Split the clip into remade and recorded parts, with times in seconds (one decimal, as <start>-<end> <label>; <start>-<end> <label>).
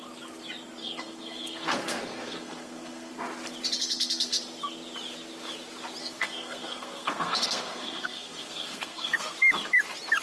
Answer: 0.0-0.8 recorded; 0.8-3.1 remade; 3.1-3.8 recorded; 3.8-4.4 remade; 4.4-6.0 recorded; 6.0-9.3 remade; 9.3-10.2 recorded